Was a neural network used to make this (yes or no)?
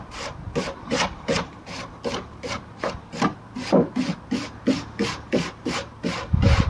yes